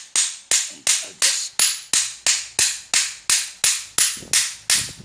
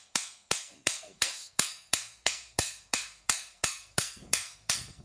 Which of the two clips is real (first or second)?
first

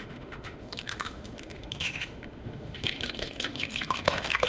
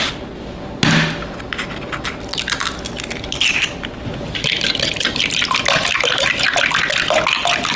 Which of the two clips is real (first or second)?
second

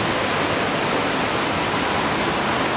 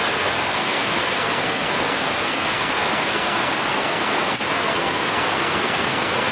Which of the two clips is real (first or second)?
first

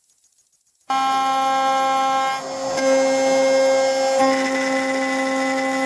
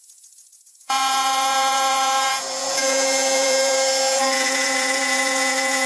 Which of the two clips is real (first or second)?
first